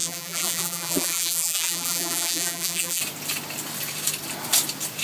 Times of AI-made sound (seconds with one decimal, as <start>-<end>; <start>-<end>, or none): 0.0-3.0